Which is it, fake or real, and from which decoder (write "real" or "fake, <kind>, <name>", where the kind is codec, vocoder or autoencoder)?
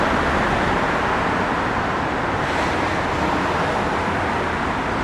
real